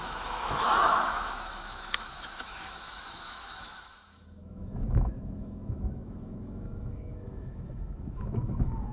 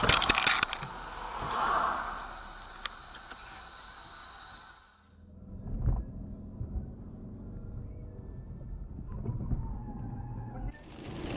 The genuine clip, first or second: second